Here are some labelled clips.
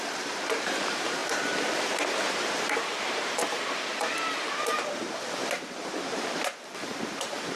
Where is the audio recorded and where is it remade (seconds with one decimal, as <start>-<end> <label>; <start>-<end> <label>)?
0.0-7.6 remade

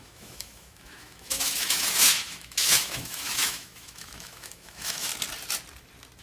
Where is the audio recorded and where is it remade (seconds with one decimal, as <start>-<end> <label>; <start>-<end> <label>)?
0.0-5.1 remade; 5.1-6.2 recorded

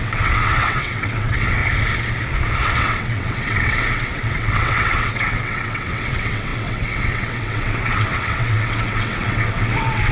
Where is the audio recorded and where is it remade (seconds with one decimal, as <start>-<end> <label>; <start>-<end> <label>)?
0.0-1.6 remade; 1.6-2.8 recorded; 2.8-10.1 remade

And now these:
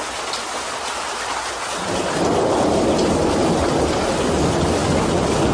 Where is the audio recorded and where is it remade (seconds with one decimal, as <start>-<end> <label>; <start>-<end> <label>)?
0.0-5.5 recorded

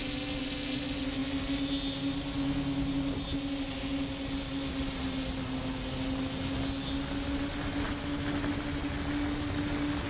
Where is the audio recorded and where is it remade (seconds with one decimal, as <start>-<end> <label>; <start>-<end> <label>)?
0.0-10.1 recorded

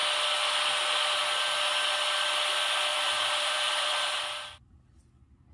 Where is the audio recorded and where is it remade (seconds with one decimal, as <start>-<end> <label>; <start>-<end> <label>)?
0.0-2.9 recorded; 2.9-4.2 remade; 4.2-5.5 recorded